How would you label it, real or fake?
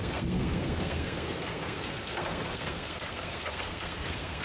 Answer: fake